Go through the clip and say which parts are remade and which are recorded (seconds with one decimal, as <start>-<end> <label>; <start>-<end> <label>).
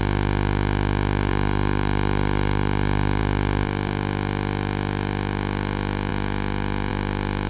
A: 0.0-1.3 recorded; 1.3-3.2 remade; 3.2-7.5 recorded